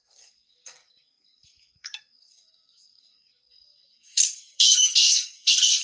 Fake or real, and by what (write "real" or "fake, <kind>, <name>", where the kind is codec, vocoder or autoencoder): fake, codec, SNAC